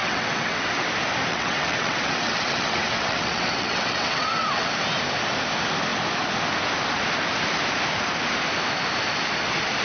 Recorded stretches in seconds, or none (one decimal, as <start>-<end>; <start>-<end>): 0.7-1.3; 4.7-9.8